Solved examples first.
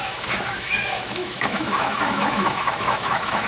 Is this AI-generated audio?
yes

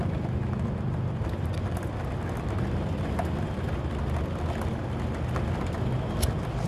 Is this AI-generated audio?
no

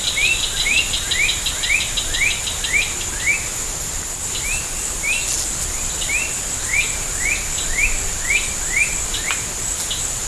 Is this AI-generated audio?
no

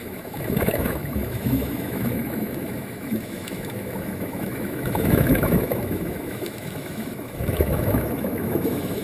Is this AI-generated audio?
yes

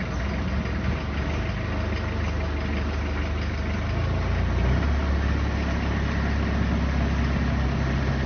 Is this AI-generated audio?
no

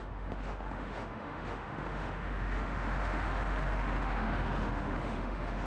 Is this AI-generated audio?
yes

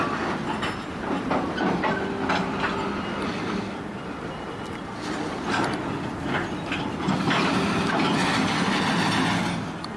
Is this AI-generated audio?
no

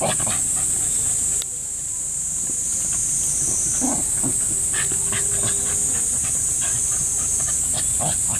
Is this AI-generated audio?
no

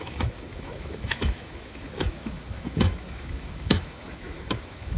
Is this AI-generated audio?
yes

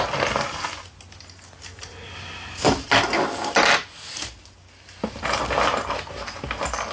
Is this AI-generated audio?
no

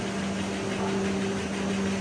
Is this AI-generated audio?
no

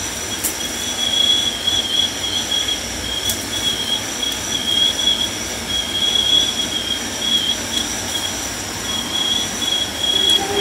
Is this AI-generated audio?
no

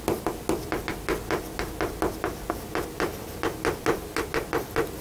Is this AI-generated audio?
no